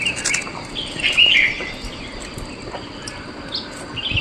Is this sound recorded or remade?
recorded